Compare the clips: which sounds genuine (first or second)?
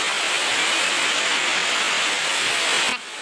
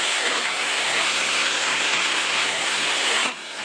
first